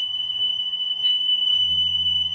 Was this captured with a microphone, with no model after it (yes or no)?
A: no